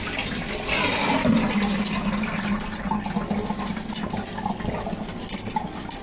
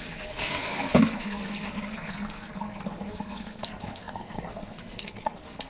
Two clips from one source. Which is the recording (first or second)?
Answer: first